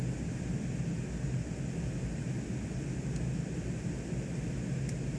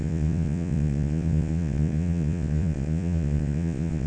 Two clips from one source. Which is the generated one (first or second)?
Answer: second